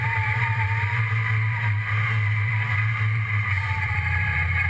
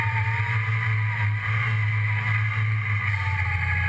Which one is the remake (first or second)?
first